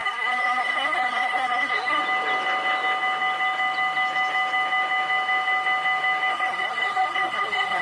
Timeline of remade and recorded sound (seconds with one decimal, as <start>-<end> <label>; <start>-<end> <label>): 0.0-2.0 remade; 2.0-6.3 recorded; 6.3-7.8 remade